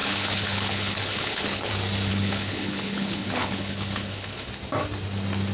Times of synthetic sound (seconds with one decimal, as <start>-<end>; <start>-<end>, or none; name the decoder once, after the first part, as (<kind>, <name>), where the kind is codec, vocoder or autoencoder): 0.0-1.7 (codec, HILCodec); 2.1-4.5